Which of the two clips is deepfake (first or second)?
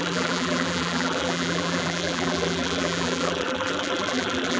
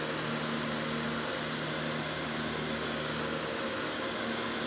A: first